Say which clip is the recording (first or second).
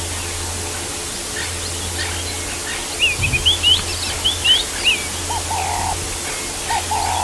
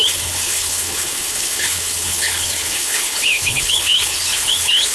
first